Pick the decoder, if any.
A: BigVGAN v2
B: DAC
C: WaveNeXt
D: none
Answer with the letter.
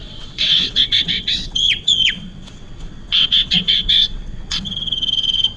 C